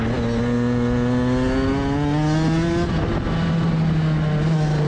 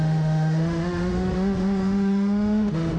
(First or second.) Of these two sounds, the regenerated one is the second